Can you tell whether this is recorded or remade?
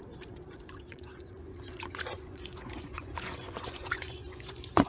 remade